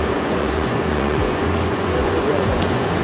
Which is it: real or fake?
fake